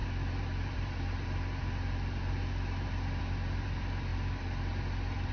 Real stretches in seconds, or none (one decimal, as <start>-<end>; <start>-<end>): none